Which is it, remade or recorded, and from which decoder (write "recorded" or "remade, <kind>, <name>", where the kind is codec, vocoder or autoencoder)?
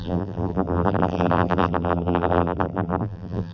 remade, vocoder, BigVGAN v2